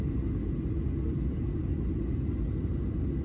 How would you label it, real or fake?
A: real